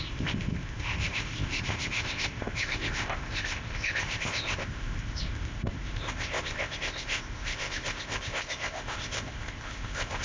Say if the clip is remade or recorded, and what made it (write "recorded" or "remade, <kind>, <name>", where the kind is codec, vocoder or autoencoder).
remade, codec, ZipCodec